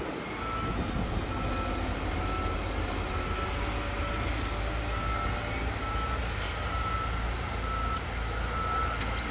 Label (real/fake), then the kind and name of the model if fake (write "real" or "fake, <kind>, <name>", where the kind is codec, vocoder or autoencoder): real